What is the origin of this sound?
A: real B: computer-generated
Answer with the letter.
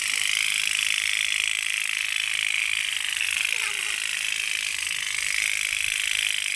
A